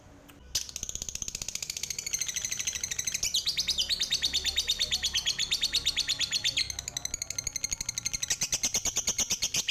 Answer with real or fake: real